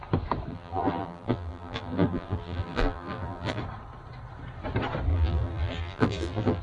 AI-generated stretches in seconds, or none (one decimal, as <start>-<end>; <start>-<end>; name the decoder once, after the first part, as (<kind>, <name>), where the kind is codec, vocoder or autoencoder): 0.5-3.6 (vocoder, BigVGAN v2); 5.1-6.6